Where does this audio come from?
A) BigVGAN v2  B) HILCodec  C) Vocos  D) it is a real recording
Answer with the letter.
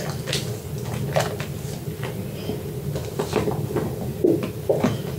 D